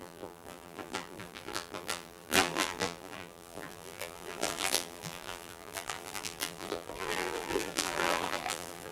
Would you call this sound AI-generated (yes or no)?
yes